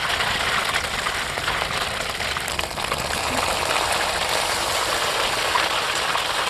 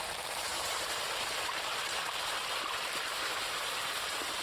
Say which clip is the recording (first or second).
first